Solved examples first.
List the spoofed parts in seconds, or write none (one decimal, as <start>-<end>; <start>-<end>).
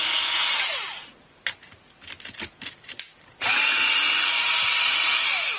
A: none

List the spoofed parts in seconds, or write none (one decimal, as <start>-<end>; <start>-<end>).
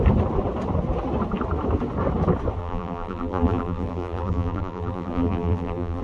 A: 2.6-6.0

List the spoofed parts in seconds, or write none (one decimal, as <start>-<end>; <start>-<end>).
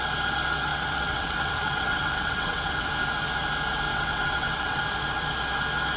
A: 0.7-2.9; 3.9-4.8